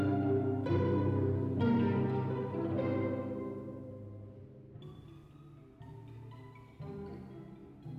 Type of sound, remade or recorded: recorded